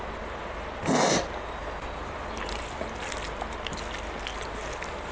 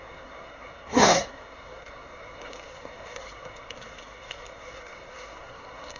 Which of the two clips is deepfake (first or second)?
second